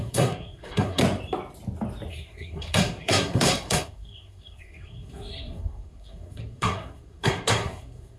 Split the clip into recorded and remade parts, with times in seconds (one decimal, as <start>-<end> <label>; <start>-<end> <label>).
0.0-1.0 remade; 1.0-2.1 recorded; 2.1-8.2 remade